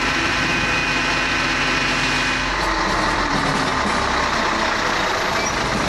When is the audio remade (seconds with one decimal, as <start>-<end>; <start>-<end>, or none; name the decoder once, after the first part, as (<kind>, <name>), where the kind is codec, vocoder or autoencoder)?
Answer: 0.0-0.8 (vocoder, BigVGAN v2); 2.5-3.7; 5.5-5.9